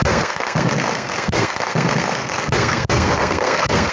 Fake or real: fake